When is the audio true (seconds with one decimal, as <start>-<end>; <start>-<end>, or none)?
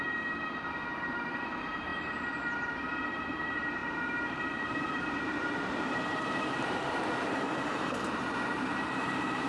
none